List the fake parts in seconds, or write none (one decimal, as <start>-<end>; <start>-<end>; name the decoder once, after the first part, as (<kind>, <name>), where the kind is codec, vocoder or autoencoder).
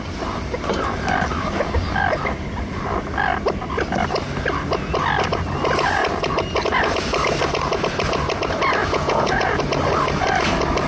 8.8-9.6 (vocoder, Vocos)